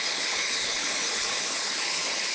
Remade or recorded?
remade